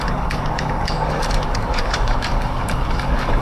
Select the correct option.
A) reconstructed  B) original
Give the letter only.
A